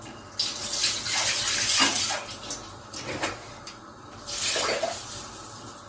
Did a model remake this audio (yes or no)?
no